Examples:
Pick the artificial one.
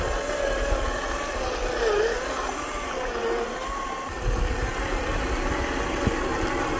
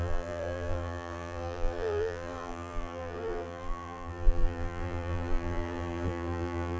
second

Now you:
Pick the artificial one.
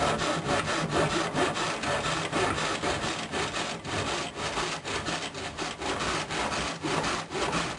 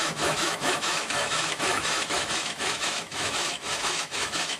second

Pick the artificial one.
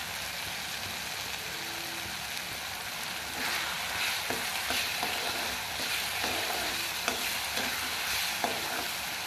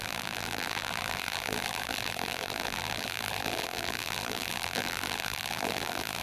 second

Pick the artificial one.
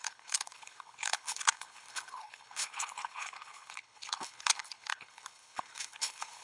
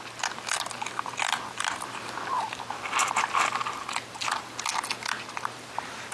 first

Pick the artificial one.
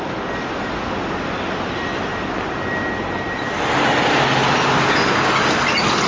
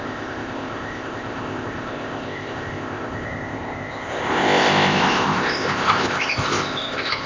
second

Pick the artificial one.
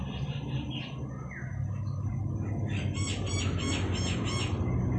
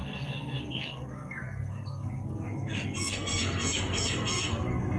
second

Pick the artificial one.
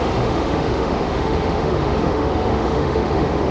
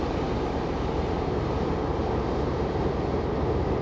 first